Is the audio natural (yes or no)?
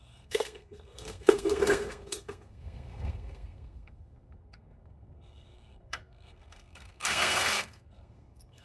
no